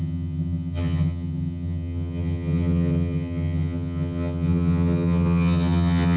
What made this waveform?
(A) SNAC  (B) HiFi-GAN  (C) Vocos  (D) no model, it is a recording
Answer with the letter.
B